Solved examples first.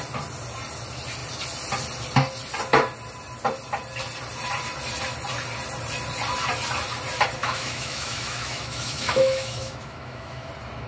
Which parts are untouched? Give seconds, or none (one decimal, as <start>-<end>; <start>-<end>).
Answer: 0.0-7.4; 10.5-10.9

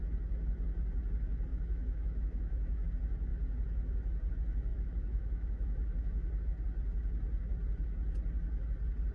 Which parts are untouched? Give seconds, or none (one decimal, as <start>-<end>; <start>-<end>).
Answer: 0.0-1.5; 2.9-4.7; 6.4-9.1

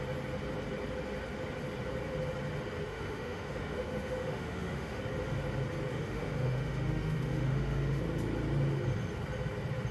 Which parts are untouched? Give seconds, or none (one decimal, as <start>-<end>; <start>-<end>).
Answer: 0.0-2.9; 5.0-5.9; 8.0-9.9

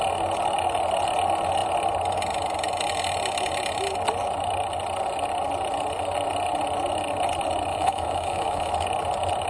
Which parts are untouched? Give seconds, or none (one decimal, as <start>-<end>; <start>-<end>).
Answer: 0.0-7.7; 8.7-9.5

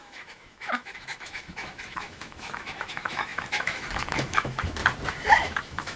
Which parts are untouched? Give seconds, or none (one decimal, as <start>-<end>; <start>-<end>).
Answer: 4.8-5.3

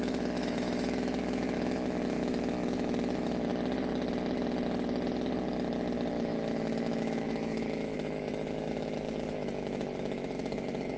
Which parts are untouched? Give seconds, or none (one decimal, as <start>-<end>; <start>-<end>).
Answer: 3.5-6.1

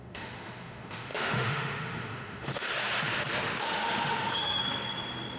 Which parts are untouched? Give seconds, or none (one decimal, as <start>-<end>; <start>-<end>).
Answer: 2.7-3.6; 4.6-5.4